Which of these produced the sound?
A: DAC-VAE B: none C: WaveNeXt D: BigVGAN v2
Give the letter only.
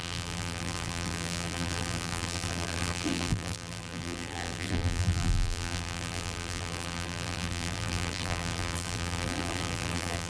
D